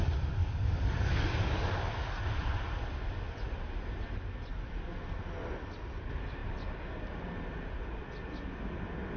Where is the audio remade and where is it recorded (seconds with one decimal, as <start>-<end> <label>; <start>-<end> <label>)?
0.0-0.4 recorded; 0.4-1.7 remade; 1.7-9.2 recorded